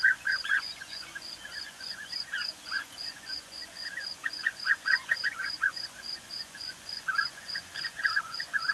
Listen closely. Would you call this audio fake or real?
fake